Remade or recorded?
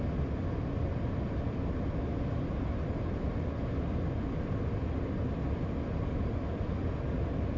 recorded